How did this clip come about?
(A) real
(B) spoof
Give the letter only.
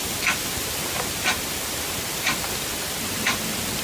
A